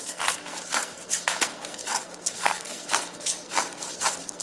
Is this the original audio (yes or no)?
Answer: no